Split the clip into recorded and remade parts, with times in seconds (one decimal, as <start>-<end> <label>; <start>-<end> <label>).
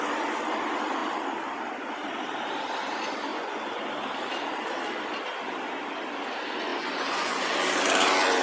0.0-3.3 recorded; 3.3-3.8 remade; 3.8-6.7 recorded; 6.7-7.5 remade; 7.5-8.4 recorded